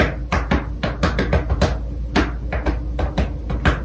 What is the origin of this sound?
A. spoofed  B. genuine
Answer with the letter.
B